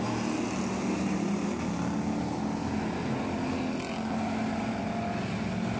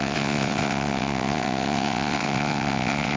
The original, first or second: first